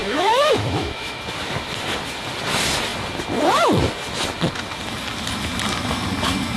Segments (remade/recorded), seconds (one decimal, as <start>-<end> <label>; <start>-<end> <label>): 0.0-1.2 remade; 1.2-6.6 recorded